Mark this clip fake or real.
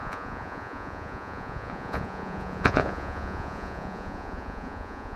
fake